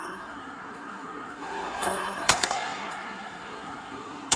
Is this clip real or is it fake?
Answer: fake